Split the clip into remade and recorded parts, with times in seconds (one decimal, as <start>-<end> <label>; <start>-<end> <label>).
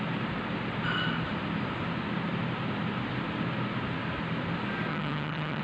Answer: 0.0-4.9 recorded; 4.9-5.6 remade